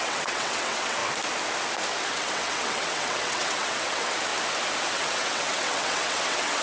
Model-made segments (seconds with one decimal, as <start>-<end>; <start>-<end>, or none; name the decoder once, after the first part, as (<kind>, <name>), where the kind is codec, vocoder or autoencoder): 0.0-1.0 (vocoder, WaveNeXt); 2.1-4.3; 4.9-6.6